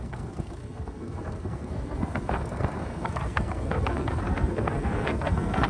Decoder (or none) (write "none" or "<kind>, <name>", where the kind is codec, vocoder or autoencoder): codec, SNAC